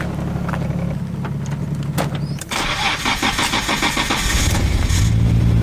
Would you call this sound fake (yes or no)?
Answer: no